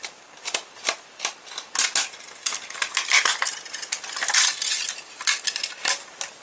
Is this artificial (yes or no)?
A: no